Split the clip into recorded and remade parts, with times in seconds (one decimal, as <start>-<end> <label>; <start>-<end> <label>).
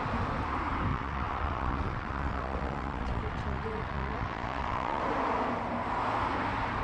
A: 0.0-0.9 recorded; 0.9-5.0 remade; 5.0-6.8 recorded